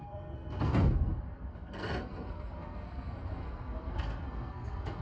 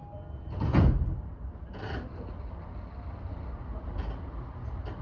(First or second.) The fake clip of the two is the first